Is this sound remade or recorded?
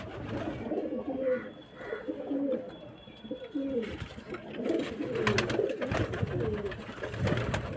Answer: recorded